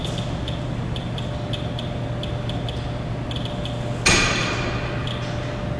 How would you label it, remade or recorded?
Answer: recorded